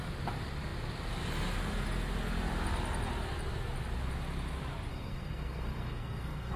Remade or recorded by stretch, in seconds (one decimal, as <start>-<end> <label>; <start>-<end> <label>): 0.0-4.9 recorded; 4.9-6.6 remade

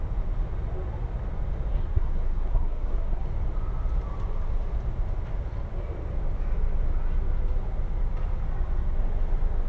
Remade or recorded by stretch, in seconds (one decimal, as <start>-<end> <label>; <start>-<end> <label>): 0.0-1.7 recorded; 1.7-3.2 remade; 3.2-9.7 recorded